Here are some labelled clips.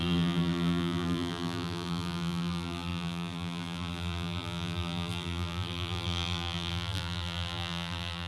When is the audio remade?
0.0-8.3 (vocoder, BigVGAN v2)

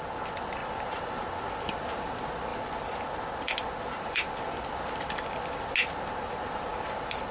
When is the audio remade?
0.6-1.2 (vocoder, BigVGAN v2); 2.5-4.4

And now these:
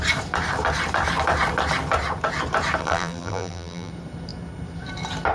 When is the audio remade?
2.8-3.9 (vocoder, BigVGAN v2)